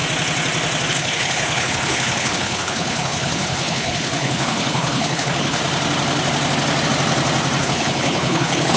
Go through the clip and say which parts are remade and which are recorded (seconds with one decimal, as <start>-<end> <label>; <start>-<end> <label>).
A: 0.0-0.9 recorded; 0.9-5.6 remade; 5.6-7.6 recorded; 7.6-8.8 remade